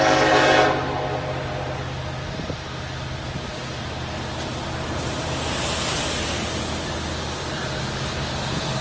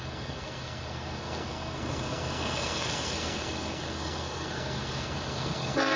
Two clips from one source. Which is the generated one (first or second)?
second